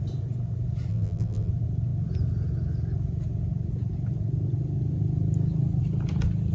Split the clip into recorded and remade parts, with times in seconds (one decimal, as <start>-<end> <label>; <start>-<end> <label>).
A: 0.0-0.9 recorded; 0.9-1.5 remade; 1.5-6.5 recorded